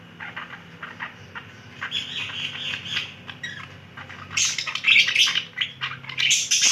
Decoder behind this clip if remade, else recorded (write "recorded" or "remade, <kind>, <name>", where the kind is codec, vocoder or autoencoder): recorded